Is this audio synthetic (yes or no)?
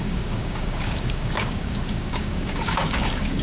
yes